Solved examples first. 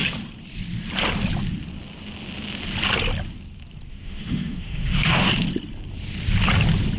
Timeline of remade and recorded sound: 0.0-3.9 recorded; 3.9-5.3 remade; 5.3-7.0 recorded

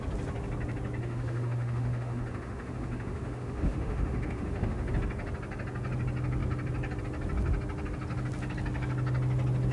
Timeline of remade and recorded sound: 0.0-1.0 recorded; 1.0-4.9 remade; 4.9-9.7 recorded

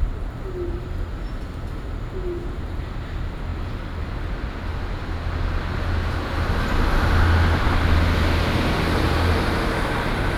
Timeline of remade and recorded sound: 0.0-10.4 recorded

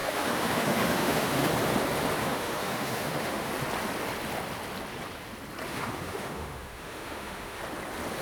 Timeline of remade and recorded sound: 0.0-1.5 remade; 1.5-2.2 recorded; 2.2-3.5 remade; 3.5-5.7 recorded; 5.7-7.6 remade; 7.6-8.2 recorded

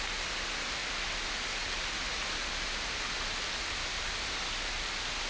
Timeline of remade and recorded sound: 0.0-5.3 recorded

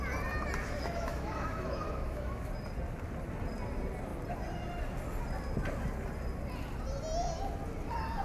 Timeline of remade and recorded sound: 0.0-0.6 recorded; 0.6-2.5 remade; 2.5-8.2 recorded

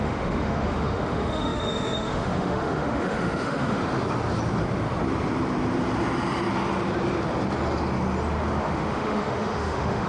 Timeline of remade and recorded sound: 0.0-3.8 remade; 3.8-8.6 recorded; 8.6-10.1 remade

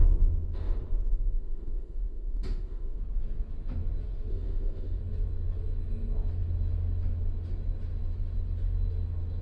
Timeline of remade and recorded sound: 0.0-3.0 remade; 3.0-4.3 recorded; 4.3-5.0 remade; 5.0-9.4 recorded